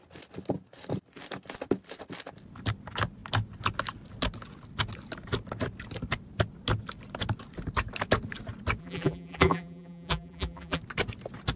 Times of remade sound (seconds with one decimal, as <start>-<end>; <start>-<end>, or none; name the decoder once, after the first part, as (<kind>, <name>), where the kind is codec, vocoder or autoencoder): 8.8-10.8 (vocoder, BigVGAN v2)